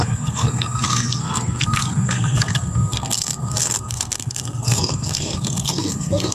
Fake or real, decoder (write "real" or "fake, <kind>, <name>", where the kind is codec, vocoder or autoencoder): fake, codec, SNAC